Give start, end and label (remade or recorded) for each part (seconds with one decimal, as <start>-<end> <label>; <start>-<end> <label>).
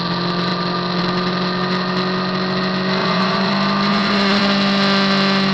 0.0-3.0 recorded; 3.0-3.5 remade; 3.5-3.9 recorded; 3.9-4.4 remade; 4.4-5.5 recorded